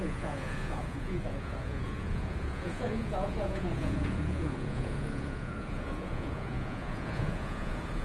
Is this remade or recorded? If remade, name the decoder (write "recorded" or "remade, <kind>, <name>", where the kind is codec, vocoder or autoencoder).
remade, vocoder, Vocos